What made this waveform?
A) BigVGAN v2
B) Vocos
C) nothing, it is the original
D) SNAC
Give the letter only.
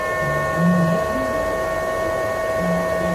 A